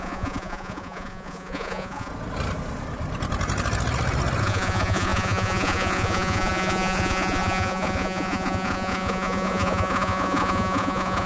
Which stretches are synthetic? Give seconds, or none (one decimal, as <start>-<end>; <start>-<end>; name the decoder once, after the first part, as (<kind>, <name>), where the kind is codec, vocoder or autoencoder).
0.0-2.1 (vocoder, Vocos); 4.4-11.3